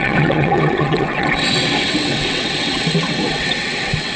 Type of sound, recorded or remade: remade